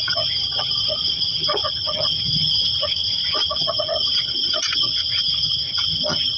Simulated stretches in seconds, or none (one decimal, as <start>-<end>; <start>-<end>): 0.0-6.4